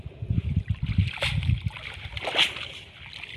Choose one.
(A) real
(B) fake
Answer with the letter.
A